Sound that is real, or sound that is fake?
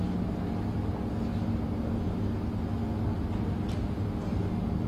real